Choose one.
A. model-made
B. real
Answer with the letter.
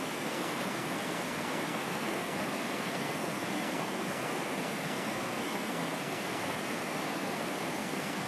A